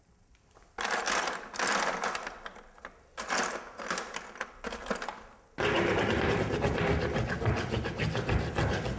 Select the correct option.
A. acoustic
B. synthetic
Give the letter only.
A